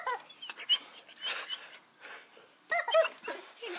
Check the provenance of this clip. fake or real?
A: real